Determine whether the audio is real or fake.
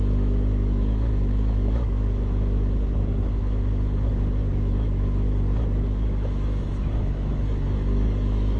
fake